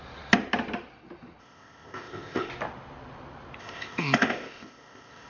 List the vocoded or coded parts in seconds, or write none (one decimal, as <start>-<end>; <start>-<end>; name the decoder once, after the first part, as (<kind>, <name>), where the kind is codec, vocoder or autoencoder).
1.4-2.5 (codec, ZipCodec); 3.6-5.3